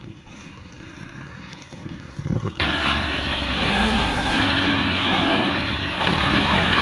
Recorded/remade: remade